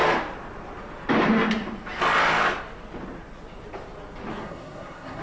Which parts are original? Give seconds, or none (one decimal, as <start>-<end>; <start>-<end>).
0.0-4.3